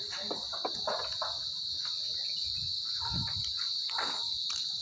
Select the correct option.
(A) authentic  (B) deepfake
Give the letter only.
A